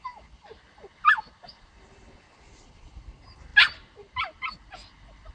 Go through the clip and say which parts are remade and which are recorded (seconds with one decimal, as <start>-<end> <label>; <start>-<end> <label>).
0.0-5.3 recorded